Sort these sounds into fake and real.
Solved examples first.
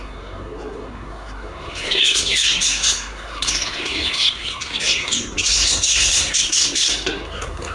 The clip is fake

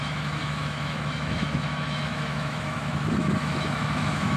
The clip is fake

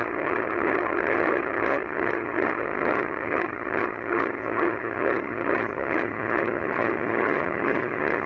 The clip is fake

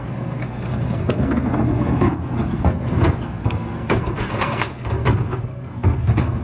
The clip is fake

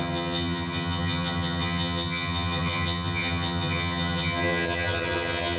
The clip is fake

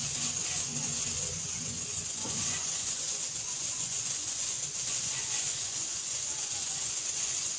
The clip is fake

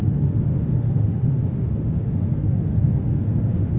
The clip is fake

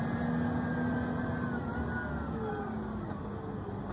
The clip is real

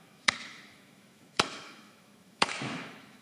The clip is fake